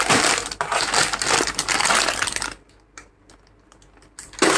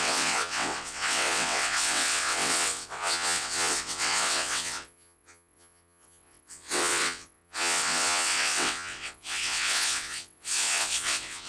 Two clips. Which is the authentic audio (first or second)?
first